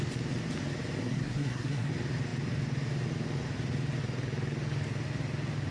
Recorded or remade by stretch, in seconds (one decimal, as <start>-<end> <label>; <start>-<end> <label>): 0.0-1.0 recorded; 1.0-1.9 remade; 1.9-5.7 recorded